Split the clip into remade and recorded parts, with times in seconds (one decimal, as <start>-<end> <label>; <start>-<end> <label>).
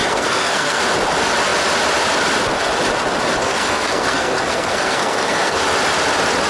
0.0-0.8 remade; 0.8-3.4 recorded; 3.4-5.6 remade; 5.6-6.5 recorded